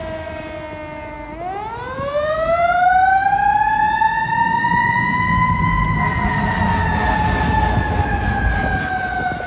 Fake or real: real